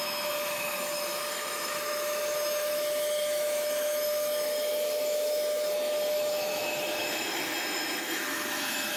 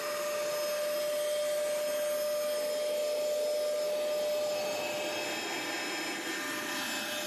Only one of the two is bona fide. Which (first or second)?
second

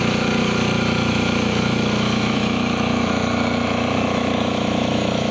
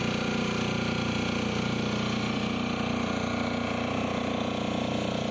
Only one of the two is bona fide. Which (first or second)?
second